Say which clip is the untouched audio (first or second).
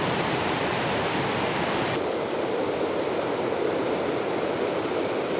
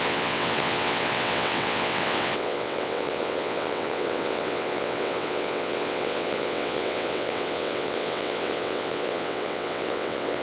first